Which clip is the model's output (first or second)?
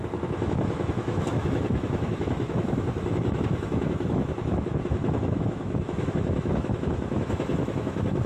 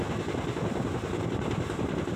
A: first